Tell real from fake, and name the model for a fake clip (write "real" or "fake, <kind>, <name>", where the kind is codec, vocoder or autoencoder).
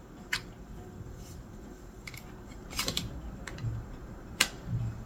fake, vocoder, BigVGAN v2